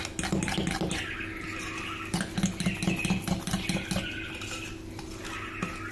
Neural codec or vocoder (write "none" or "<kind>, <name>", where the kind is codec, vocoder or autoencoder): none